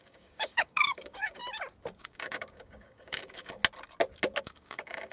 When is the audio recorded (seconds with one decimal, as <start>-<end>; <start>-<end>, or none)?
1.4-2.0; 3.6-4.4